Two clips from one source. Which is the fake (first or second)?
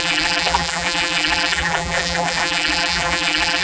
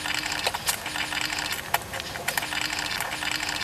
first